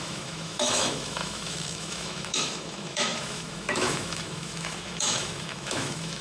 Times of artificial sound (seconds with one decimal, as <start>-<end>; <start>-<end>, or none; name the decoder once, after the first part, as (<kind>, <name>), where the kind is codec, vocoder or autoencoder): 0.0-6.2 (autoencoder, DAC-VAE)